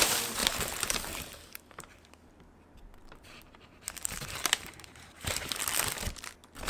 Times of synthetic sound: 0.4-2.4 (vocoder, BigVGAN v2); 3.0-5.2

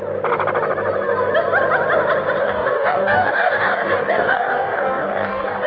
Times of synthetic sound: 2.4-5.7 (codec, DAC)

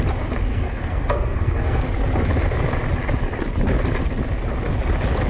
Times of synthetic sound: 0.5-1.8 (codec, SNAC)

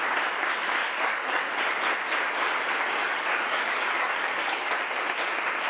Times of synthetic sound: 0.8-1.6 (codec, DAC); 3.0-4.7

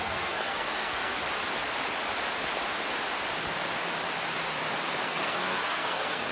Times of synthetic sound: 0.0-1.2 (codec, SNAC); 5.0-6.3

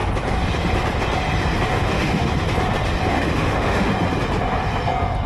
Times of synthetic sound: 1.7-2.3 (autoencoder, DAC-VAE); 3.1-3.9